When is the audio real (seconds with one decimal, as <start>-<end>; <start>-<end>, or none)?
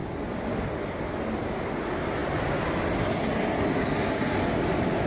0.0-5.1